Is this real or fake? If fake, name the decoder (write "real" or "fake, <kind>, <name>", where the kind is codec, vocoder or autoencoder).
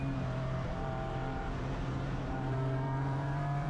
fake, vocoder, BigVGAN v2